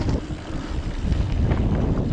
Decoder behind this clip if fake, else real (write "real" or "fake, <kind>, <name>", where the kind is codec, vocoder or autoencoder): fake, vocoder, BigVGAN v2